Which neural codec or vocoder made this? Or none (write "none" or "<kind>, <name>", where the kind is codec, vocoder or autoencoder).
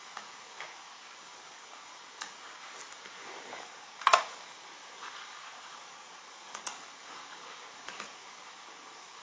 codec, DAC